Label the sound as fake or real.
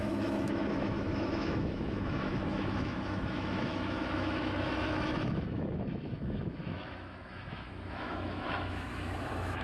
fake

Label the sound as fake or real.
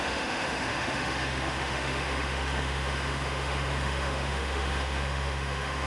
fake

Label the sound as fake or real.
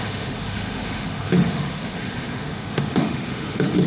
fake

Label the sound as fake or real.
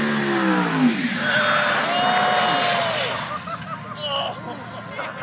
real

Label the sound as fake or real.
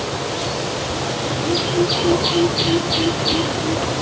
real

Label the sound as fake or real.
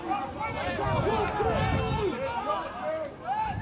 real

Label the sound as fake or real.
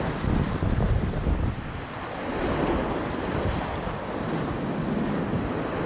real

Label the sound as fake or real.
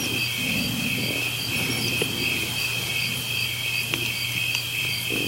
real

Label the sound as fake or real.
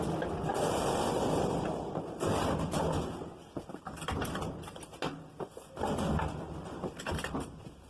real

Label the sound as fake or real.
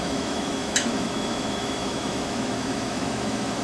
fake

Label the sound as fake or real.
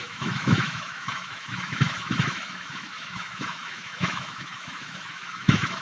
fake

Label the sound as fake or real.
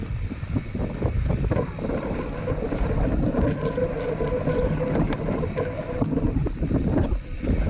real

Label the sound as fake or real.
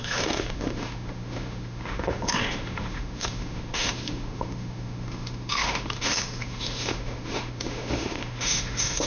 fake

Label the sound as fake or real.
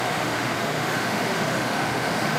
fake